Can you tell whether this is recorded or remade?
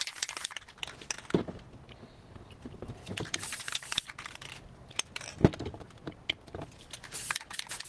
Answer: recorded